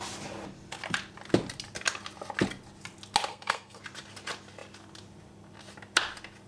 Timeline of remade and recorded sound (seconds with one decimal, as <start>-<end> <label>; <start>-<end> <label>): 0.0-3.3 recorded; 3.3-3.8 remade; 3.8-6.5 recorded